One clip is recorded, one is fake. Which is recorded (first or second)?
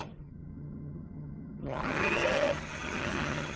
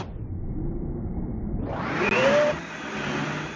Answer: second